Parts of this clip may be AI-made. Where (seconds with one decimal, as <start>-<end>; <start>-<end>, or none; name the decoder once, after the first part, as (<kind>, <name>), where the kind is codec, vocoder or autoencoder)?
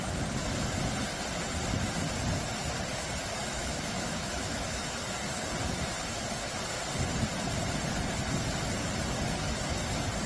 3.4-4.9 (autoencoder, DAC-VAE)